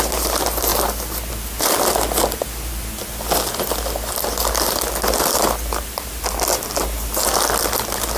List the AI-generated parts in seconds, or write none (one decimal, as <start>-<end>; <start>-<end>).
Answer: none